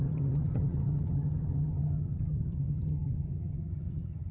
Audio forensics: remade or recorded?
remade